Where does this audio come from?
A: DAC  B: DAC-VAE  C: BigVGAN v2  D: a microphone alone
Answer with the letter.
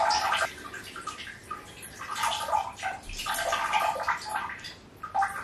D